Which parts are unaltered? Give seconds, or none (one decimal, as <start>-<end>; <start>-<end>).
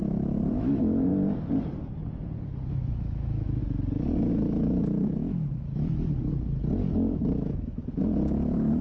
1.1-2.7; 3.6-4.3; 6.3-7.2